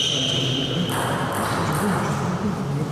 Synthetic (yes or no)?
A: no